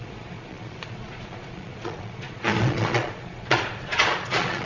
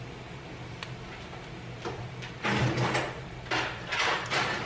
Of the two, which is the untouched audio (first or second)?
second